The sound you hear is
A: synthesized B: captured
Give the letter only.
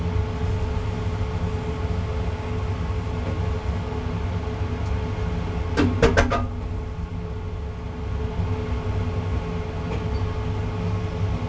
B